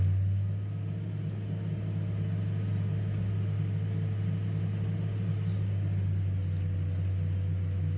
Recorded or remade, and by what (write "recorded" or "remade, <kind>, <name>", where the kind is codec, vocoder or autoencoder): recorded